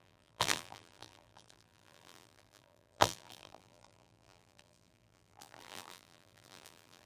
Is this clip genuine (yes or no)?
no